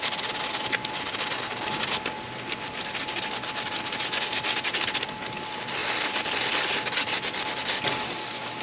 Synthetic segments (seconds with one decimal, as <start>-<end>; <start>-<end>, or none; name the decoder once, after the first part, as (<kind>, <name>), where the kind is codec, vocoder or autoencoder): none